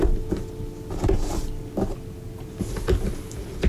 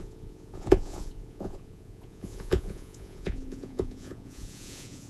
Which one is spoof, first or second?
second